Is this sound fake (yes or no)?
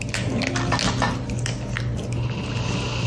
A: no